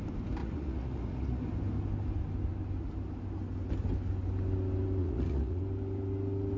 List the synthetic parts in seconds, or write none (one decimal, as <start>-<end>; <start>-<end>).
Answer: 0.4-1.4; 5.0-5.6